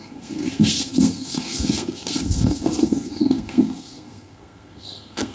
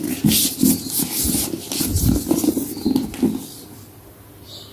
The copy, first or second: first